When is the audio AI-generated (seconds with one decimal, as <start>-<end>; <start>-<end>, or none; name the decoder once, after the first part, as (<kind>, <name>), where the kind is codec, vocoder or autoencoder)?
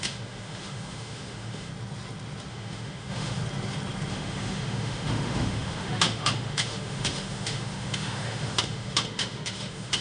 0.0-1.7 (autoencoder, DAC-VAE); 2.5-3.4; 4.1-10.0